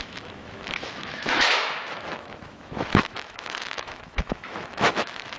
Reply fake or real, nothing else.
fake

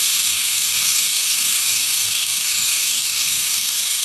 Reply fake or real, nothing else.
fake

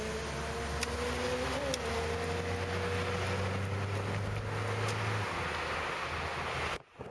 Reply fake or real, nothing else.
real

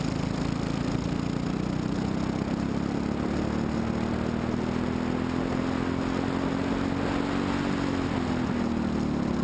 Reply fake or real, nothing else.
real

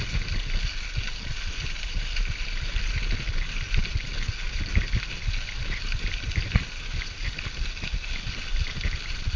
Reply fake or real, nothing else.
real